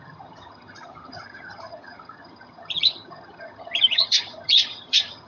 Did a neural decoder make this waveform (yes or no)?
yes